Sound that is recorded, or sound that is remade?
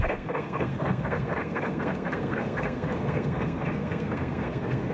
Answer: remade